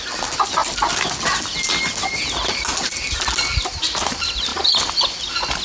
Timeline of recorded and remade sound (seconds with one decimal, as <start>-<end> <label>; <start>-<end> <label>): 0.0-5.6 recorded